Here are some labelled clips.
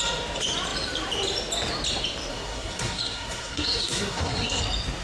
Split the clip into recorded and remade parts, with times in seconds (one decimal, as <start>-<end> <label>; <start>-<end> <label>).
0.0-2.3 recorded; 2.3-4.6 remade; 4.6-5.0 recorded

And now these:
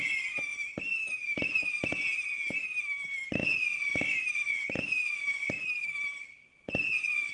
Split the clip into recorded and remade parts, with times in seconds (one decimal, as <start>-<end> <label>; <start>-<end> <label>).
0.0-7.3 recorded

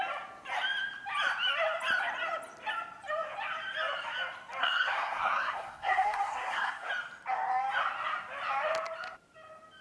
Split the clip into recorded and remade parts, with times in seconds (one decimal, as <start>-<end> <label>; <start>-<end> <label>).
0.0-4.6 recorded; 4.6-6.9 remade; 6.9-9.8 recorded

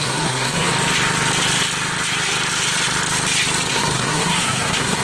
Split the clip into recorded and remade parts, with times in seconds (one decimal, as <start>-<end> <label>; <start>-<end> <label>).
0.0-0.7 remade; 0.7-3.7 recorded; 3.7-5.0 remade